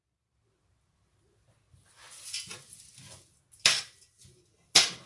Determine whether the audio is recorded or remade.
recorded